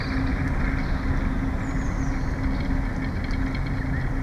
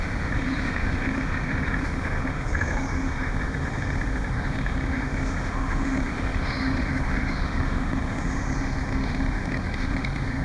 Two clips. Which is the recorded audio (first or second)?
first